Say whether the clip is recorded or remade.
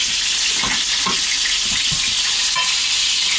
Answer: recorded